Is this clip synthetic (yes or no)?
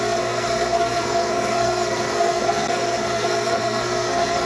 yes